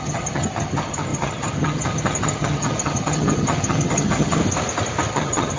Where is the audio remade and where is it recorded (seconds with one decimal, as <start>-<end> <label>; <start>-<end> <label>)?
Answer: 0.0-4.4 remade; 4.4-5.1 recorded; 5.1-5.6 remade